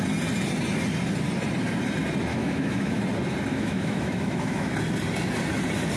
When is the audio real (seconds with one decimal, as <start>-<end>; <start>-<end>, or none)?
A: 0.0-2.3; 3.0-3.5; 4.7-6.0